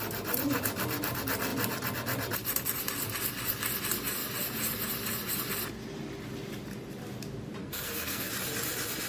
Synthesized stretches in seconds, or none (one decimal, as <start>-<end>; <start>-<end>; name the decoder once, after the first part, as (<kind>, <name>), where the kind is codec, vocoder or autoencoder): 7.6-8.3 (codec, SNAC)